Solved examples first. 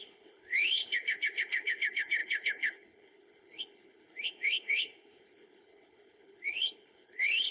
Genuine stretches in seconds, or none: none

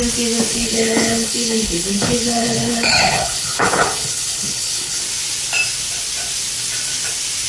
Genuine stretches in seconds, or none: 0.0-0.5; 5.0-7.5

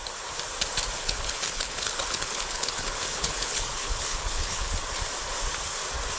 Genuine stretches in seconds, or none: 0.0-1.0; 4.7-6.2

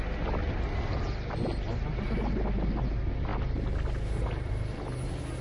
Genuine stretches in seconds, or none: 0.0-5.4